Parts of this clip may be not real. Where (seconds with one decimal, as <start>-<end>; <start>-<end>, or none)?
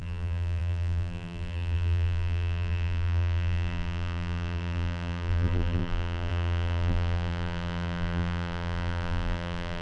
0.0-9.8